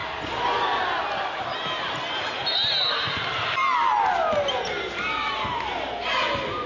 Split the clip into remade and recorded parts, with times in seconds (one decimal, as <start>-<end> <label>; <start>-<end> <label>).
0.0-6.7 recorded